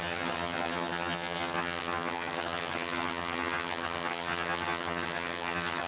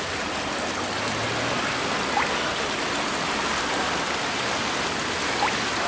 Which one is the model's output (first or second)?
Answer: first